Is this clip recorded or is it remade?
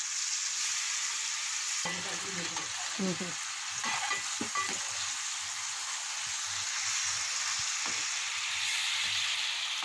recorded